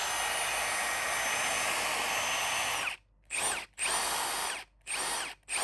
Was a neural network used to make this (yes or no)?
no